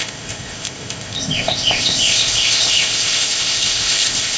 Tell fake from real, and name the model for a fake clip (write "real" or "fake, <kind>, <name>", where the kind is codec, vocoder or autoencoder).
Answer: fake, codec, ZipCodec